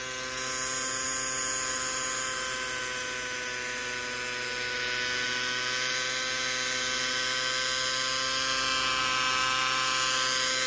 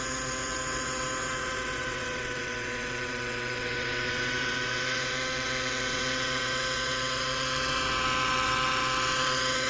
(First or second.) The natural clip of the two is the first